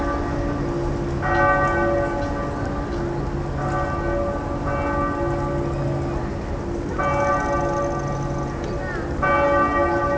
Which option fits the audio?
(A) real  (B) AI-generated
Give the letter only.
A